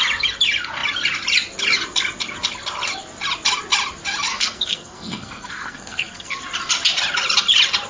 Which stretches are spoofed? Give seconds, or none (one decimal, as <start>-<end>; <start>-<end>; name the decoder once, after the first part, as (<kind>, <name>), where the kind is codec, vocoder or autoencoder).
4.3-6.4 (codec, SNAC)